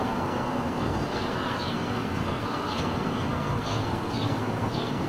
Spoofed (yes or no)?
yes